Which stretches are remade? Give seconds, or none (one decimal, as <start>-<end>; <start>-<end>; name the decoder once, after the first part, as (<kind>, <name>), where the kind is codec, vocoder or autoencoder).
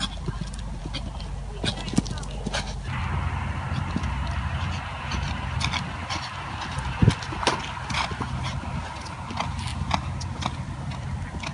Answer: none